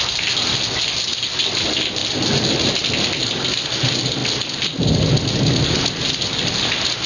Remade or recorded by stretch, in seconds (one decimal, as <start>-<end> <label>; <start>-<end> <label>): 0.0-7.1 recorded